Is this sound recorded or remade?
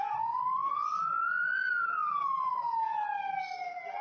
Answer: recorded